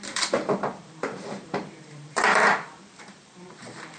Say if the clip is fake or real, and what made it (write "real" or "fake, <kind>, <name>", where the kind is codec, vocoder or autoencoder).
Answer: fake, vocoder, BigVGAN v2